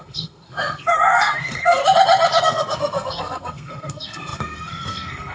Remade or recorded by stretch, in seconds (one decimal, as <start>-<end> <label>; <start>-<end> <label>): 0.0-1.8 remade; 1.8-2.4 recorded; 2.4-5.3 remade